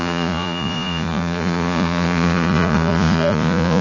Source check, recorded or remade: remade